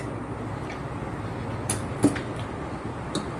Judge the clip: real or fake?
real